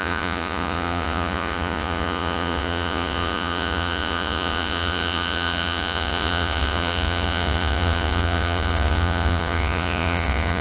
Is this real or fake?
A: fake